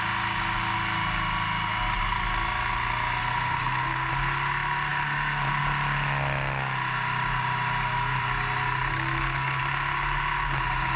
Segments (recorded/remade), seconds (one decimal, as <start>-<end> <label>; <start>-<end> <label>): 0.0-3.2 recorded; 3.2-4.1 remade; 4.1-8.9 recorded; 8.9-9.6 remade; 9.6-11.0 recorded